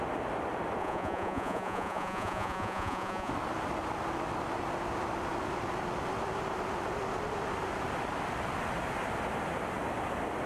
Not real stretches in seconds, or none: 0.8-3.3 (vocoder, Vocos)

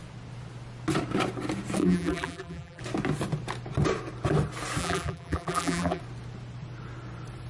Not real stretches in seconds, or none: 1.8-2.8 (vocoder, BigVGAN v2); 4.8-6.0

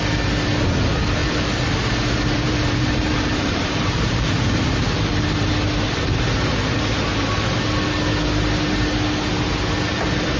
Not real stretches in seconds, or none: 1.2-5.5 (vocoder, BigVGAN v2)